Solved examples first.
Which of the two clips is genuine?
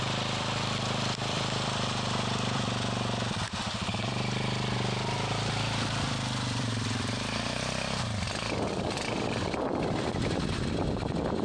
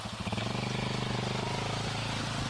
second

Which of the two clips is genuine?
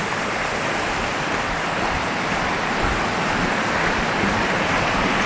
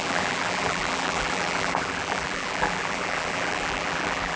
first